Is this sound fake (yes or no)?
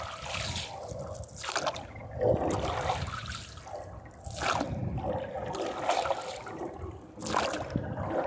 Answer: no